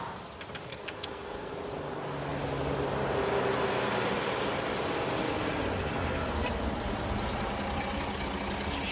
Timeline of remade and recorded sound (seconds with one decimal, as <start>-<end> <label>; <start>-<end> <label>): 0.0-0.7 recorded; 0.7-1.5 remade; 1.5-8.9 recorded